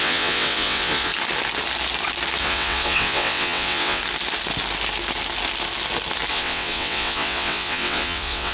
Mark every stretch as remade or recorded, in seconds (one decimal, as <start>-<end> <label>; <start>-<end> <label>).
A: 0.0-1.1 remade; 1.1-2.4 recorded; 2.4-4.0 remade; 4.0-6.3 recorded; 6.3-8.5 remade